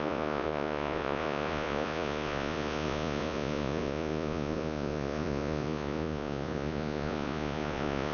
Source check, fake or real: fake